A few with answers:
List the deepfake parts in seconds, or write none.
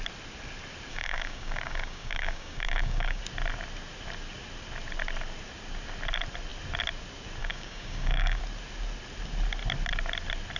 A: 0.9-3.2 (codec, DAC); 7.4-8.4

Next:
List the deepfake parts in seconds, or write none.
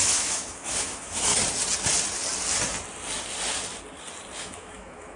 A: 0.0-1.3 (autoencoder, DAC-VAE); 4.4-5.2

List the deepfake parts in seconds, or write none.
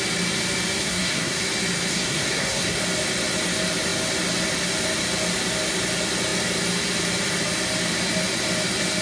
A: 0.8-1.4 (codec, SNAC); 1.9-2.8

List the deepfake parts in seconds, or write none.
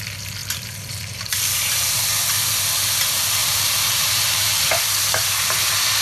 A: 0.4-2.0 (vocoder, BigVGAN v2); 3.4-4.8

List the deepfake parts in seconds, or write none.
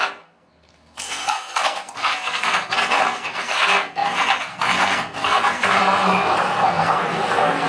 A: 0.0-7.7 (codec, SNAC)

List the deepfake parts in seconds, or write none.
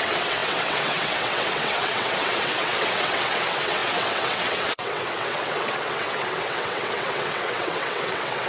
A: 0.0-8.5 (vocoder, WaveNeXt)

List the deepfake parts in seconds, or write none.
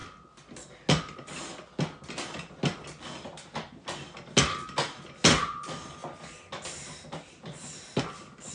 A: none